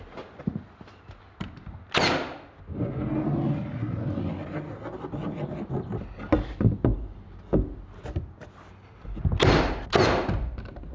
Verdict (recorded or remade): recorded